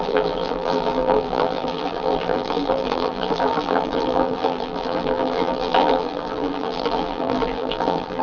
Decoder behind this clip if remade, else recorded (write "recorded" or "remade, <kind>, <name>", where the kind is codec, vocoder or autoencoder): remade, vocoder, BigVGAN v2